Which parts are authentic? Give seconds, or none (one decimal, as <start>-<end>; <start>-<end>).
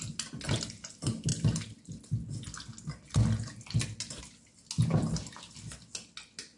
0.0-6.6